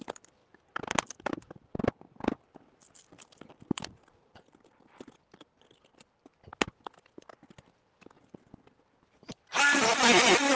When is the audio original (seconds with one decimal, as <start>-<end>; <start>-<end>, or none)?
0.0-10.6